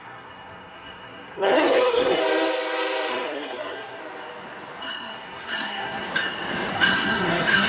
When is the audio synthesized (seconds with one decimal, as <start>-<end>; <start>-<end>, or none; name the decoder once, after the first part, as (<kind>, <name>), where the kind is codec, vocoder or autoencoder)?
0.0-2.2 (codec, SNAC); 3.1-4.0; 4.8-6.1; 6.7-7.7